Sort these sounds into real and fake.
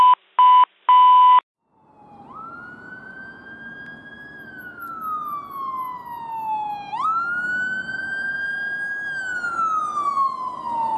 real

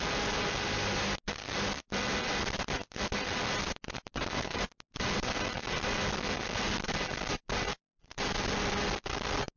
real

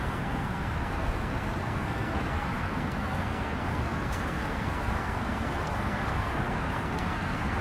fake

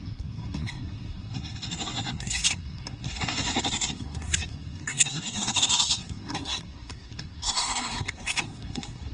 fake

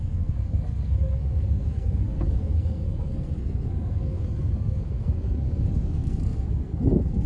fake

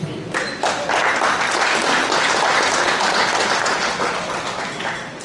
real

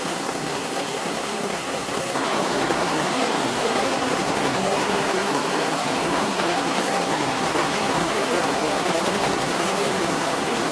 fake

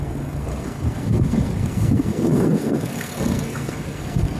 fake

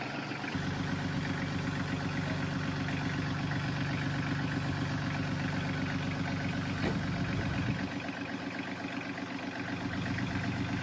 real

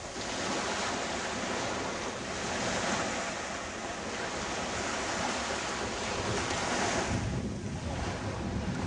real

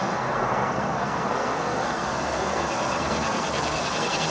fake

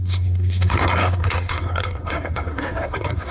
fake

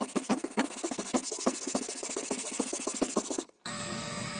fake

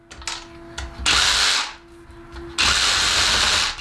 real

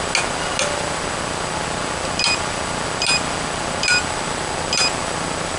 real